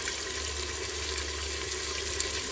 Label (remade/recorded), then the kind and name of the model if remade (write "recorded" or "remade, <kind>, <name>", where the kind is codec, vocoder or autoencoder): recorded